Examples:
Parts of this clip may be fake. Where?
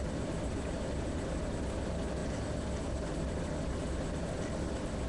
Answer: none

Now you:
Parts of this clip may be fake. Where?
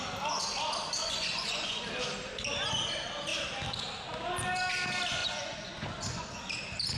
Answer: 1.0-1.8 (vocoder, Vocos); 5.2-6.4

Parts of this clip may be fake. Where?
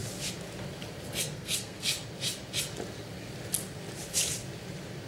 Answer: 1.2-1.9 (codec, SNAC)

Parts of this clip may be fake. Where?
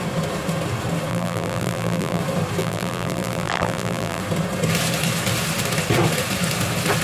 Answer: 1.1-2.2 (vocoder, BigVGAN v2); 2.6-4.2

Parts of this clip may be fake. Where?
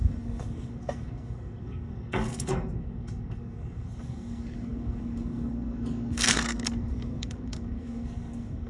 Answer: 0.0-8.7 (codec, SNAC)